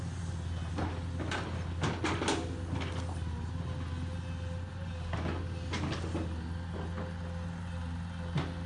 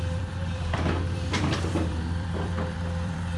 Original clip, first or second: first